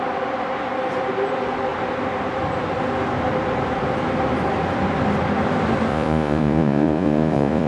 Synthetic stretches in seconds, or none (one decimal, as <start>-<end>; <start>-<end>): 5.9-7.7